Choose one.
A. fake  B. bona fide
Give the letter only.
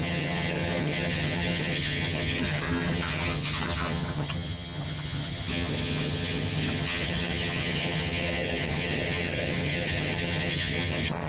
A